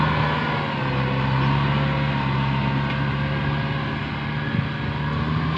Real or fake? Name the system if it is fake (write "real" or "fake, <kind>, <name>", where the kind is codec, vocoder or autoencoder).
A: real